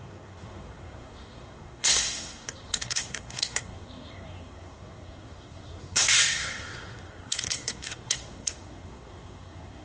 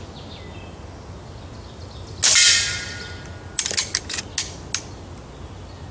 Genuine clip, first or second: second